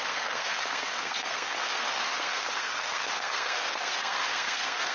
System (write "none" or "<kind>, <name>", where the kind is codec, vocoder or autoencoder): codec, SNAC